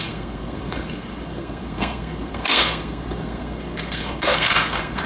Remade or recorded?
remade